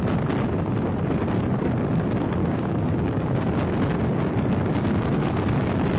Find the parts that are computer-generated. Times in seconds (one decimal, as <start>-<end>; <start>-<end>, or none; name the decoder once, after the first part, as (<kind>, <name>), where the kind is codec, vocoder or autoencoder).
2.4-3.4 (codec, DAC)